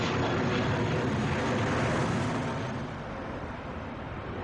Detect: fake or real real